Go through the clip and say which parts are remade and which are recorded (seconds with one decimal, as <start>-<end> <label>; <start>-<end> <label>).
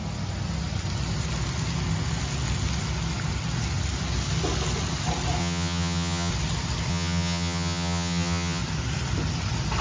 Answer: 0.0-5.4 recorded; 5.4-6.3 remade; 6.3-6.9 recorded; 6.9-8.6 remade; 8.6-9.8 recorded